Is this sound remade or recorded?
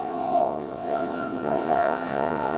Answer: remade